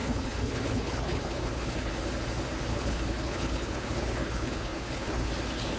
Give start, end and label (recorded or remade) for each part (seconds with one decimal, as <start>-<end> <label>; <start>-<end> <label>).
0.0-1.9 remade; 1.9-2.7 recorded; 2.7-5.3 remade; 5.3-5.8 recorded